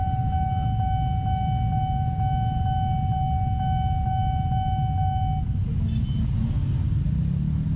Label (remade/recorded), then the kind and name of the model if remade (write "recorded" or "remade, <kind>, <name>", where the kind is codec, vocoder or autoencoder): recorded